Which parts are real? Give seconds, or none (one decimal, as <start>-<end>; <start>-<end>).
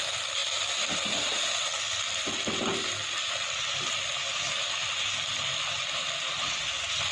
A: 0.0-7.1